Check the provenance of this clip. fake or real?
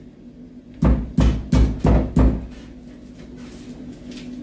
real